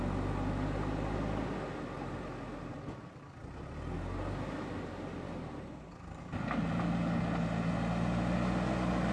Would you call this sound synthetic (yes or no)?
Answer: no